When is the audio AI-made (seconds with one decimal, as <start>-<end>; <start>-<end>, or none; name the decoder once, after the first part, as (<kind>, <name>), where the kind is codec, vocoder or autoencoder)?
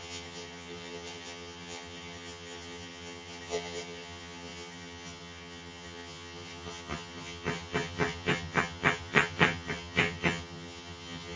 0.0-11.4 (vocoder, HiFi-GAN)